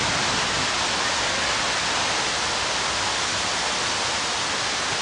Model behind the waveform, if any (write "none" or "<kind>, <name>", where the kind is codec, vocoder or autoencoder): none